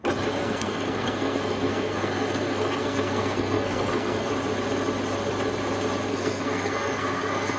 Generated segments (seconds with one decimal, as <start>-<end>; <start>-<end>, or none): 0.4-4.3; 6.1-7.6